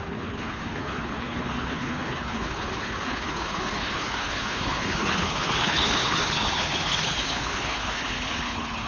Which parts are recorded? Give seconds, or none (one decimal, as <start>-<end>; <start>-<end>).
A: none